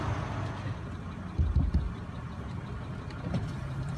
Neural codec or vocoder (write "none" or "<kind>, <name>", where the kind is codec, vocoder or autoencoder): none